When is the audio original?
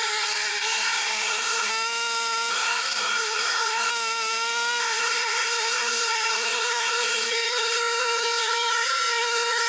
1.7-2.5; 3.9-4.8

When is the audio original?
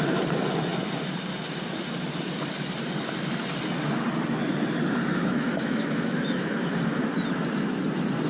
0.0-5.1; 7.0-8.3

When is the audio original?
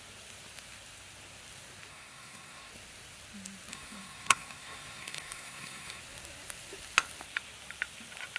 0.0-1.9; 2.7-3.7; 6.0-8.4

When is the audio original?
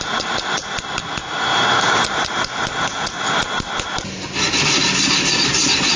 0.6-1.8; 2.5-4.6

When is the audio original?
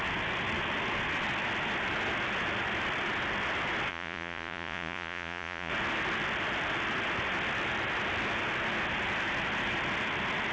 0.0-3.9; 5.7-10.5